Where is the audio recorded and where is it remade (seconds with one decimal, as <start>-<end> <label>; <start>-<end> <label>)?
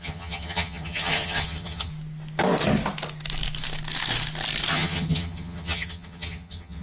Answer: 0.0-1.9 remade; 1.9-4.7 recorded; 4.7-6.8 remade